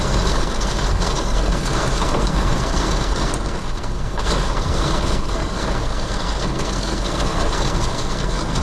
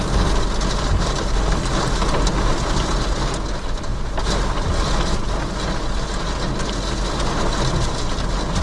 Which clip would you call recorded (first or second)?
second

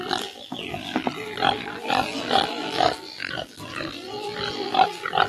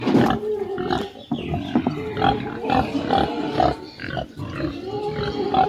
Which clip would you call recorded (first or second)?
second